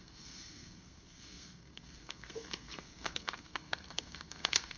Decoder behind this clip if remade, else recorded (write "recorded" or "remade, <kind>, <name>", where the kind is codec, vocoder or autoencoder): remade, codec, SNAC